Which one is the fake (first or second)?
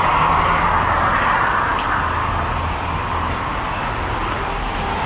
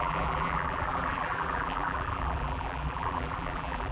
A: second